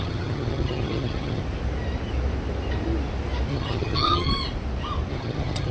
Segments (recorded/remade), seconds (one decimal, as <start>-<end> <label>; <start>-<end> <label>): 0.0-1.4 remade; 1.4-3.5 recorded; 3.5-4.3 remade; 4.3-5.1 recorded; 5.1-5.7 remade